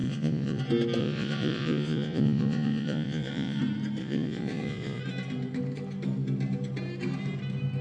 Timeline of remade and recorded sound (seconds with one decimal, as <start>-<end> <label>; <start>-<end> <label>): 0.0-0.6 remade; 0.6-1.0 recorded; 1.0-3.6 remade; 3.6-4.0 recorded; 4.0-5.0 remade; 5.0-7.8 recorded